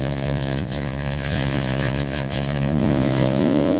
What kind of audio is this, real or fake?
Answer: fake